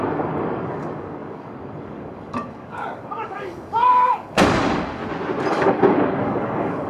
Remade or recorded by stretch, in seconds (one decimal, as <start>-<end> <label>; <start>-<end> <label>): 0.0-5.0 remade; 5.0-5.5 recorded; 5.5-6.9 remade